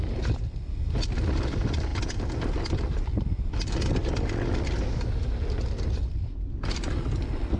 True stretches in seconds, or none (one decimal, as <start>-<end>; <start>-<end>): 0.0-7.6